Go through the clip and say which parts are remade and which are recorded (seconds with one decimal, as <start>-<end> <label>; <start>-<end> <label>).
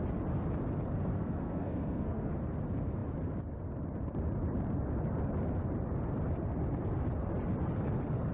0.0-1.1 recorded; 1.1-2.3 remade; 2.3-8.3 recorded